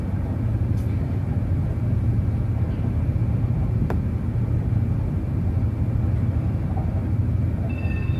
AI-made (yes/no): no